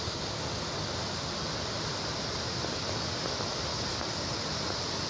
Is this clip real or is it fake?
real